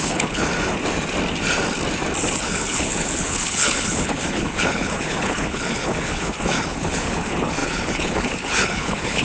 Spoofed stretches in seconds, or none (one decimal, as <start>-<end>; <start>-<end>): 0.0-0.5; 2.4-9.2